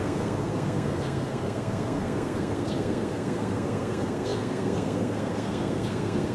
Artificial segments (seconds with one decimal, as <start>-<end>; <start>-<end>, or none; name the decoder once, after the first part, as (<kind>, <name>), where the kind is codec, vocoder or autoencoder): 0.0-6.3 (codec, SNAC)